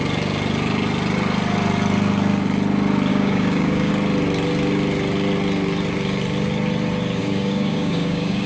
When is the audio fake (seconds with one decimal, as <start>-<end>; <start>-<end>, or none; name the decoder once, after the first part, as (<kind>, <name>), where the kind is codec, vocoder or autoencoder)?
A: 3.1-3.9 (codec, DAC); 7.2-8.5